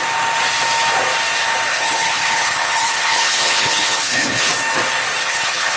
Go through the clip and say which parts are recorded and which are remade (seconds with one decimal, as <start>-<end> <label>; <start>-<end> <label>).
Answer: 0.0-1.7 recorded; 1.7-4.5 remade; 4.5-5.2 recorded; 5.2-5.8 remade